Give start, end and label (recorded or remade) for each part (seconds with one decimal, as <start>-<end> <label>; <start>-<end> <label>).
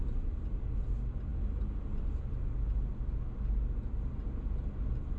0.0-5.2 recorded